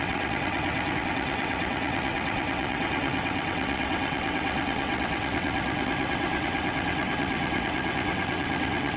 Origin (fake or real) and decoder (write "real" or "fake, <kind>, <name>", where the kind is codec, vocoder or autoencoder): fake, vocoder, WaveNeXt